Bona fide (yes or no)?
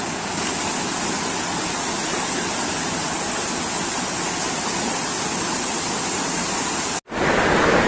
yes